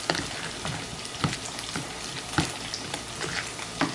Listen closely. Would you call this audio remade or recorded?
recorded